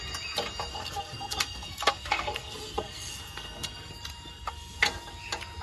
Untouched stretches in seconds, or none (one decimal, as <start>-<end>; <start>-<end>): 0.0-0.7; 3.9-4.3; 4.8-5.6